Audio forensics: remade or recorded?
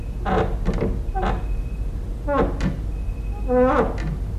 recorded